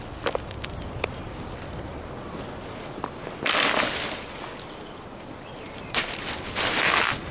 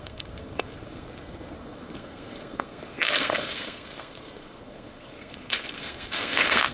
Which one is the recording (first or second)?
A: first